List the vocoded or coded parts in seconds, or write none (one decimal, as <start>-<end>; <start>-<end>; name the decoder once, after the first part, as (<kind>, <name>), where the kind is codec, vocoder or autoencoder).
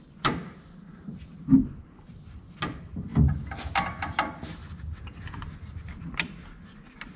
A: none